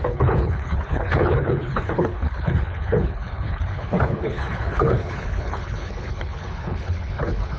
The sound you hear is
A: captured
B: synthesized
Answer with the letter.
B